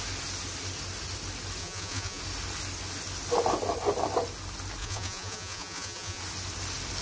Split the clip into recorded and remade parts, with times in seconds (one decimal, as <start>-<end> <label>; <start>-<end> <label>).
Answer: 0.0-1.6 recorded; 1.6-2.2 remade; 2.2-4.8 recorded; 4.8-6.2 remade; 6.2-7.0 recorded